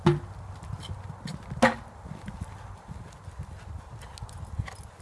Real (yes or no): yes